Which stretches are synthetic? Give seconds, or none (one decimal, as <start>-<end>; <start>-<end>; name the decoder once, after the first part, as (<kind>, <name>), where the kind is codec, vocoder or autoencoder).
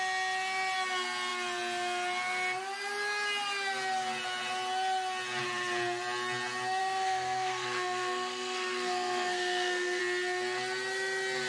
6.8-10.0 (codec, SNAC)